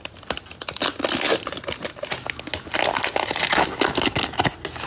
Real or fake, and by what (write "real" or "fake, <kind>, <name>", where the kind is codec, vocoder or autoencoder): real